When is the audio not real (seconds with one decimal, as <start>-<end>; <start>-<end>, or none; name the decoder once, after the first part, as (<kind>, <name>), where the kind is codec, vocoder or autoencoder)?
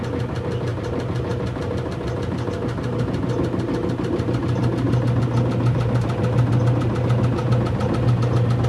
none